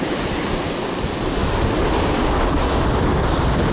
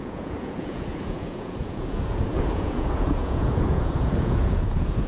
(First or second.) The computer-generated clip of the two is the second